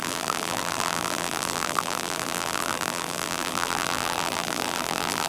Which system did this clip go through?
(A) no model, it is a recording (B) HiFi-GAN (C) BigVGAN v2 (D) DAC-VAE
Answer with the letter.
C